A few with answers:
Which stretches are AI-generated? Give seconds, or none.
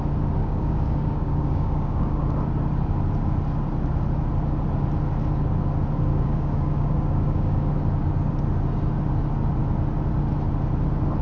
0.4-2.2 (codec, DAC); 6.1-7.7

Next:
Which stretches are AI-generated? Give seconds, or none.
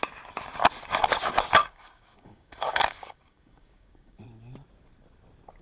1.6-4.2 (codec, DAC)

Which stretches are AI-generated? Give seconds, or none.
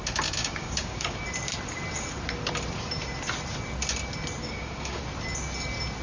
0.4-1.2 (codec, DAC); 4.4-5.0